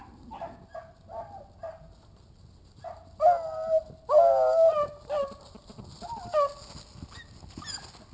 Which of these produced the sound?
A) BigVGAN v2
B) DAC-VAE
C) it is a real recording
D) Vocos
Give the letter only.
C